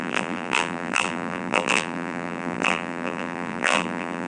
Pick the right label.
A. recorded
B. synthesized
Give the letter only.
B